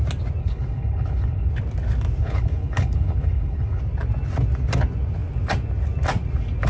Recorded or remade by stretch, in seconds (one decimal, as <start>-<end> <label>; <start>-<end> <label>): 0.0-0.4 recorded; 0.4-1.5 remade; 1.5-2.2 recorded; 2.2-3.8 remade; 3.8-6.7 recorded

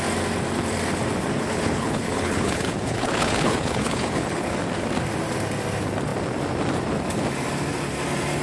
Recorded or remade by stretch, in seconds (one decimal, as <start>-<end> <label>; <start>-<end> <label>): 0.0-1.3 recorded; 1.3-4.5 remade; 4.5-8.4 recorded